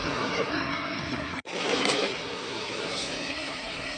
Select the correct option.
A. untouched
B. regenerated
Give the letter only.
B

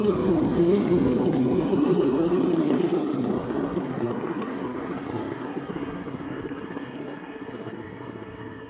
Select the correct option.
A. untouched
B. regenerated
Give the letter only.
B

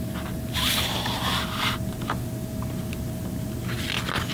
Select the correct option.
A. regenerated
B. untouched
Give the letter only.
B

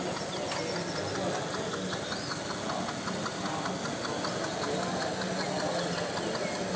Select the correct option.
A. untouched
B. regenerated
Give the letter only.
A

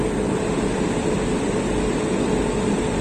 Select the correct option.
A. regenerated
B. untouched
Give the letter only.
B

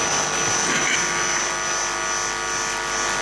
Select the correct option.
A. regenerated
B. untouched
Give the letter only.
B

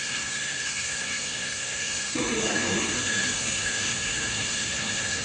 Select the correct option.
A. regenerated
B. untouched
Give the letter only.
A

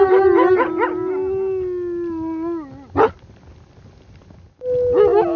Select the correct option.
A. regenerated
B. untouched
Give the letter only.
B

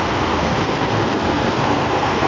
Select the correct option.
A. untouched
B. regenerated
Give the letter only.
B